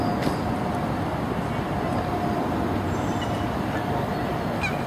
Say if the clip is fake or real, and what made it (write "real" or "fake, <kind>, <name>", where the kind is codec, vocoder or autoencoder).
real